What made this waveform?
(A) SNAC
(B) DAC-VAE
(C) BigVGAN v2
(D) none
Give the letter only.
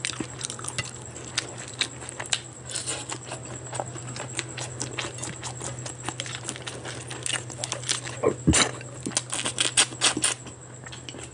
D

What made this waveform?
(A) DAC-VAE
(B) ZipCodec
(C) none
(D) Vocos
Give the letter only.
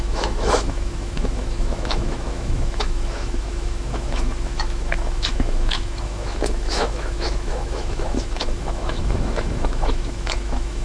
A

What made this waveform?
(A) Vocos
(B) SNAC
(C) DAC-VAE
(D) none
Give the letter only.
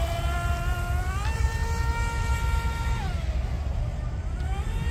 D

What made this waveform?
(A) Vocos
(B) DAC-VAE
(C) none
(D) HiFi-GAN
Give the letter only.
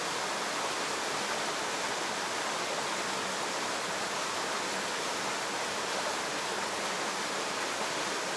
C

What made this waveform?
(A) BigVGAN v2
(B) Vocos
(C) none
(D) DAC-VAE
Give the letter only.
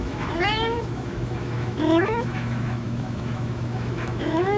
D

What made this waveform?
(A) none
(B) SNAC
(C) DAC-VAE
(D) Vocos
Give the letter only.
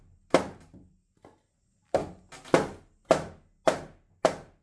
A